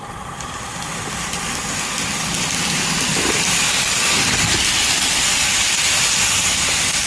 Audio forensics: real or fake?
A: real